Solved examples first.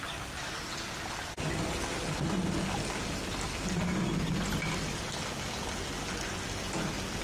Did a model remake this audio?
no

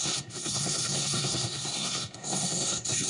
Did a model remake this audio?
yes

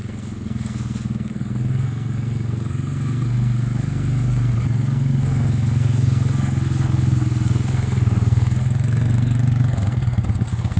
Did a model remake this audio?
yes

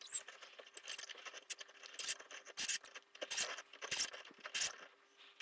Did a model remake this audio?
no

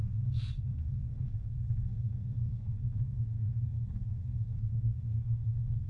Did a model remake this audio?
yes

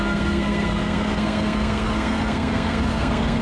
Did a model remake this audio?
yes